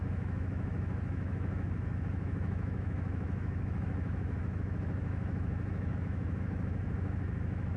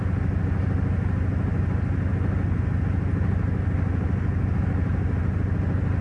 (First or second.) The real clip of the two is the second